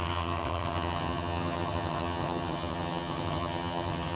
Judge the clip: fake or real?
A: fake